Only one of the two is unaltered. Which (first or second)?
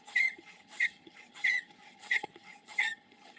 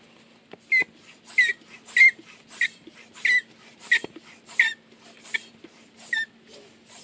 second